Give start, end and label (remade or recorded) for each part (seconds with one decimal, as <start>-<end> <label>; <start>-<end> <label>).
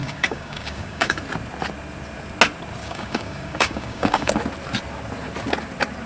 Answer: 0.0-1.2 remade; 1.2-2.8 recorded; 2.8-4.3 remade; 4.3-6.1 recorded